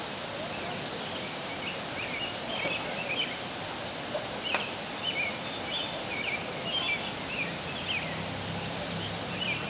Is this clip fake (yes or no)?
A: no